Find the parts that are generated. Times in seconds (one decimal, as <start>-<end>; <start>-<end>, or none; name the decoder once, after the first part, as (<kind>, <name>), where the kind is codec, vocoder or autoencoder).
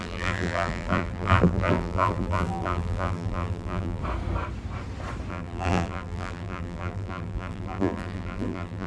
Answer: 0.0-4.0 (vocoder, BigVGAN v2); 5.3-8.9